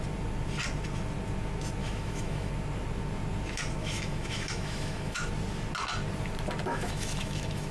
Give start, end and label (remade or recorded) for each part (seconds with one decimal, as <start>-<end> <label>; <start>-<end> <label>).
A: 0.0-1.8 recorded; 1.8-2.5 remade; 2.5-3.8 recorded; 3.8-5.3 remade; 5.3-6.7 recorded; 6.7-7.7 remade